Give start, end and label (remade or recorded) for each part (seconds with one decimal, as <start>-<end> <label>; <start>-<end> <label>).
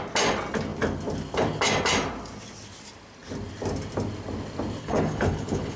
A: 0.0-4.8 recorded; 4.8-5.8 remade